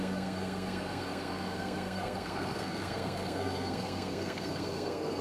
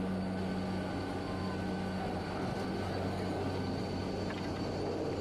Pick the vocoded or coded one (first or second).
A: first